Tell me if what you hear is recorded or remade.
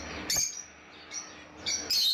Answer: recorded